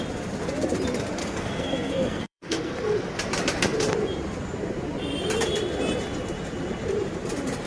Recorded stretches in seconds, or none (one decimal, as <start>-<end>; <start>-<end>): 0.0-1.2; 2.7-7.7